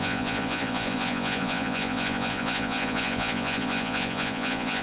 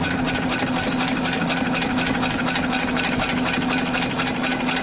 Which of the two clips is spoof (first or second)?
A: first